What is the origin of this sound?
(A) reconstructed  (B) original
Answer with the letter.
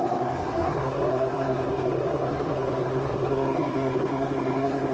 A